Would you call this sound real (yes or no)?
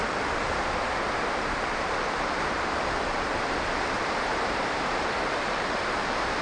no